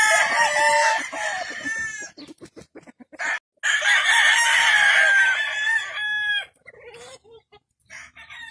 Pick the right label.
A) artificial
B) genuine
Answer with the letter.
B